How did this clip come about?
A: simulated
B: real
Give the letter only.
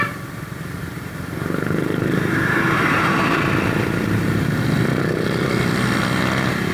A